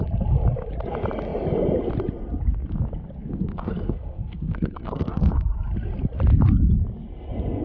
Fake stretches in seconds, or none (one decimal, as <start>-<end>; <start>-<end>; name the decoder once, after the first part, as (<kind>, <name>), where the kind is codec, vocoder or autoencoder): 3.3-5.4 (codec, SNAC)